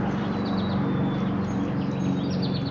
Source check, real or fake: real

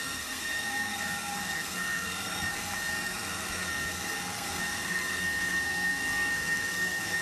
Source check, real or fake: fake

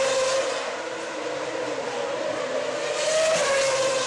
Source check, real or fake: real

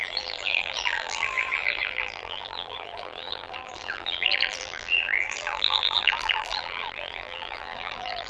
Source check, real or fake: fake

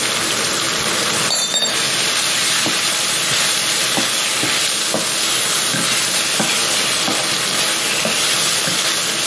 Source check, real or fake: real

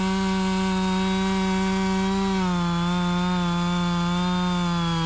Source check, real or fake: real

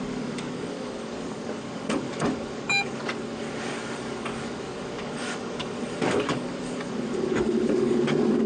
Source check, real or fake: fake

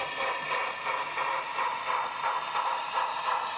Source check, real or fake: real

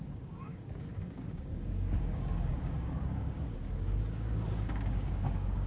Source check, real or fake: fake